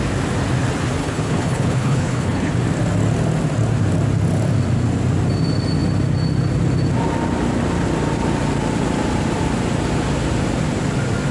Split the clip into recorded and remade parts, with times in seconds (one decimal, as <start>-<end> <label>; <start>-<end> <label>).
0.0-1.0 recorded; 1.0-2.5 remade; 2.5-11.3 recorded